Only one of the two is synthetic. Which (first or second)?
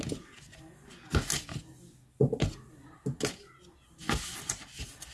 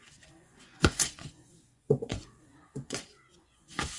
second